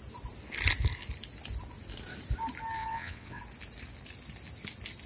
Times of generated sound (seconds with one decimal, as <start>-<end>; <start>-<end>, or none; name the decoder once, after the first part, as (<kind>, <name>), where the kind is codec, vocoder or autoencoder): 2.8-3.4 (vocoder, WaveNeXt)